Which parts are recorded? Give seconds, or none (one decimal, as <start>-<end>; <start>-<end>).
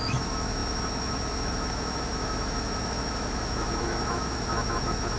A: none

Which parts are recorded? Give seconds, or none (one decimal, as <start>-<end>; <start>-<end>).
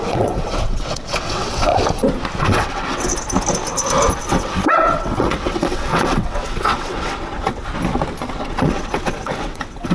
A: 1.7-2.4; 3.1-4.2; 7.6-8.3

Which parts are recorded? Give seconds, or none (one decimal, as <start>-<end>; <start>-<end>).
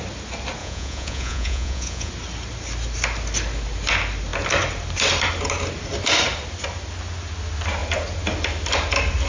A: 0.0-0.6; 2.1-9.3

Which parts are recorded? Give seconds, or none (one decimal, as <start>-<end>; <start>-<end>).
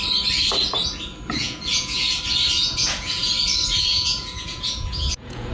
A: 0.0-1.4; 2.2-2.6; 3.3-3.9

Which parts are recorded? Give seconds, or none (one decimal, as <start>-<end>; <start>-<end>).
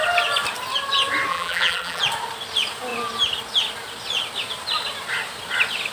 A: 0.0-1.3; 2.0-5.9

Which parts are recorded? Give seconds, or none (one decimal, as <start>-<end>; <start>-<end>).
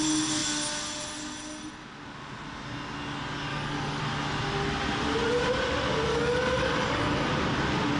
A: 0.0-3.5; 4.0-6.1; 7.3-8.0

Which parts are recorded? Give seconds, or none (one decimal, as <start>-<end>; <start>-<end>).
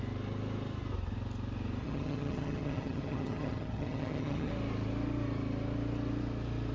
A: 0.0-1.8; 4.5-6.7